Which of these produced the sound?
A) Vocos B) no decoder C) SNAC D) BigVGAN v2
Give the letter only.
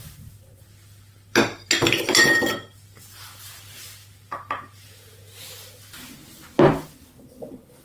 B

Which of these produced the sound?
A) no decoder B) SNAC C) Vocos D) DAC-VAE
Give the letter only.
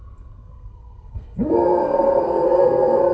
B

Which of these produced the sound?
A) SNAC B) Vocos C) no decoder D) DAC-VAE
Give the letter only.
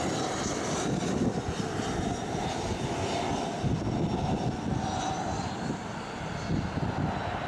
C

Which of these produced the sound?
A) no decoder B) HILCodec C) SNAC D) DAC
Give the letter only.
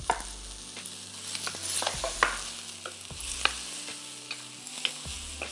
A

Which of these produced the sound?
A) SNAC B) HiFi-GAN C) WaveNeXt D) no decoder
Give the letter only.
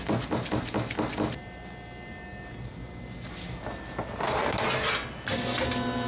D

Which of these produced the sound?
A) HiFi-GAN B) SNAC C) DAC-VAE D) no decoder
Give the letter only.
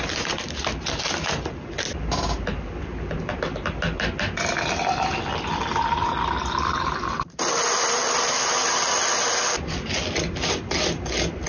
D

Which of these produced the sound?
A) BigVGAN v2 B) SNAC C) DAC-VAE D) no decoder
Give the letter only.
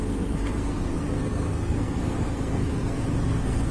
B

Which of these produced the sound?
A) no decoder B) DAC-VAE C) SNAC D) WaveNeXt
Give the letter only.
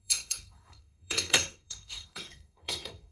C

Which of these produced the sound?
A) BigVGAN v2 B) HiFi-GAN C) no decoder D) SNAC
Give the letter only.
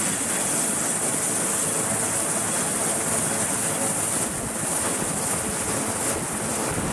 C